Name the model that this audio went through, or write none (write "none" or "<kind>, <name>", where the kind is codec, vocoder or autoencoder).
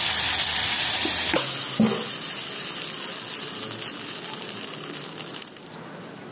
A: none